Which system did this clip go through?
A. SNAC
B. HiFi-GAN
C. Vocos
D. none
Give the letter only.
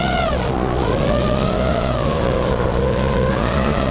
C